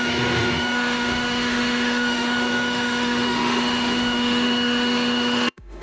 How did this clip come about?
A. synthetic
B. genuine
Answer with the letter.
A